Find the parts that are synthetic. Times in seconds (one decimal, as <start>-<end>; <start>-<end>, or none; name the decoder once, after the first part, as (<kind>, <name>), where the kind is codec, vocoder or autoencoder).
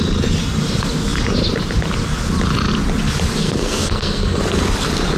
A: 3.4-4.4 (codec, SNAC)